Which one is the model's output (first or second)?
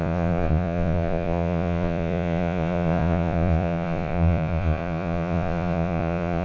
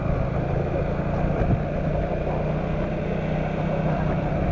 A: first